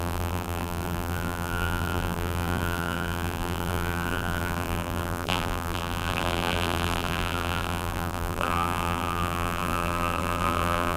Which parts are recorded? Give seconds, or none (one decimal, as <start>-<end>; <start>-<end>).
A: none